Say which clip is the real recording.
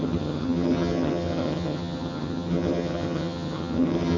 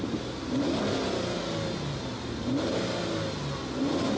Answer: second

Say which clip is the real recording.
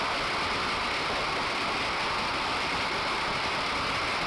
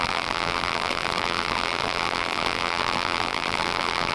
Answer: first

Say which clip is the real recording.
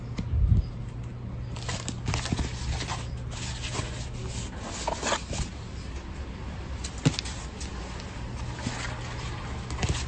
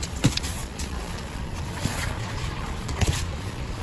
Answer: first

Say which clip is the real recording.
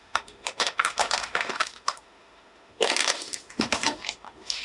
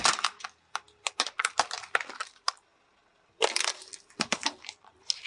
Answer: second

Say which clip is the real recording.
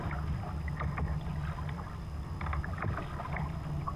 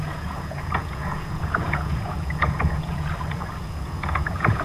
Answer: first